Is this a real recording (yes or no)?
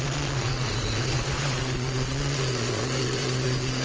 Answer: no